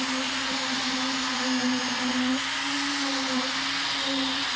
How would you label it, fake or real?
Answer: real